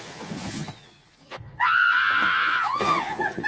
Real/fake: fake